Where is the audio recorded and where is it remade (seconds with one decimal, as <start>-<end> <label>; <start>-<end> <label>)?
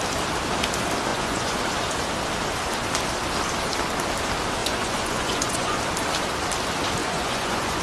0.0-1.1 recorded; 1.1-1.6 remade; 1.6-4.6 recorded; 4.6-5.8 remade; 5.8-7.0 recorded; 7.0-7.8 remade